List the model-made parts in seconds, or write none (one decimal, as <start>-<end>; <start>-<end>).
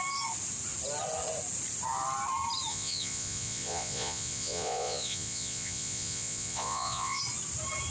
2.7-7.2